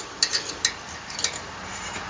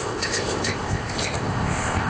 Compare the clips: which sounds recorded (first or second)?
first